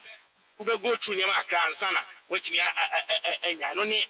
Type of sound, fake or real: fake